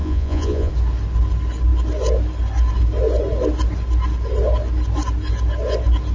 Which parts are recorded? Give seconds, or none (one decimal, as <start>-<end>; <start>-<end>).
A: 0.7-6.1